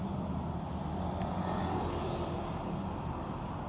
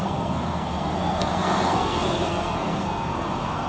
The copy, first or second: second